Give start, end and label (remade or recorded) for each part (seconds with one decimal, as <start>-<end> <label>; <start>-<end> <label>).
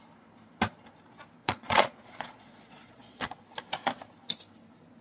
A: 0.0-1.4 recorded; 1.4-3.4 remade; 3.4-5.0 recorded